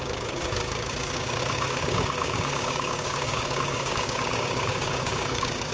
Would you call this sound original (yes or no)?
no